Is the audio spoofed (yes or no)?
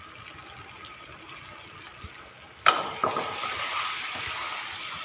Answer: no